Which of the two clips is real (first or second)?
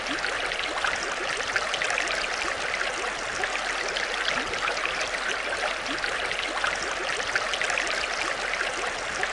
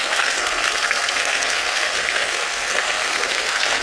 first